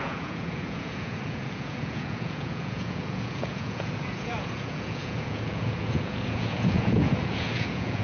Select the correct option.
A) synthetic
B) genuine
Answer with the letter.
A